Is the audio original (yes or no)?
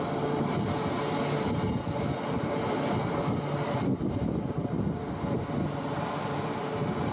yes